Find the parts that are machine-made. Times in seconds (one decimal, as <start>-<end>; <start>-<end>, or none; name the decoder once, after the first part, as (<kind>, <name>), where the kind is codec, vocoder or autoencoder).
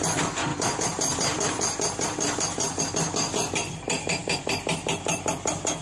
0.5-2.8 (vocoder, BigVGAN v2)